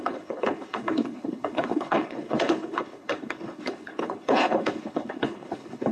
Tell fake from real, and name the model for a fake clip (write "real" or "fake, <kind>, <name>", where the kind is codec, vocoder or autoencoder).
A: fake, codec, HILCodec